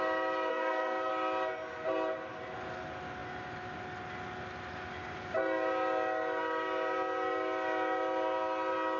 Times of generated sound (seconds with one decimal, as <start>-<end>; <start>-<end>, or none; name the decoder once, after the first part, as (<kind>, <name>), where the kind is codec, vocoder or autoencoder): 0.5-1.1 (codec, SNAC)